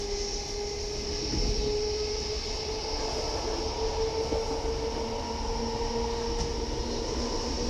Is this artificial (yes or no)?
no